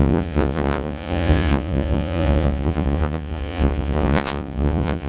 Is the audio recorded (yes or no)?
no